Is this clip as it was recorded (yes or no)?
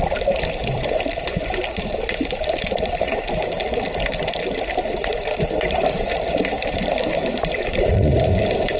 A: no